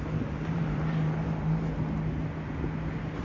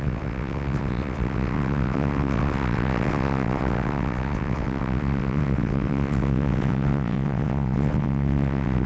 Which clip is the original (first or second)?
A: first